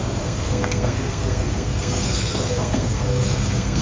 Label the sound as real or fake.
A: fake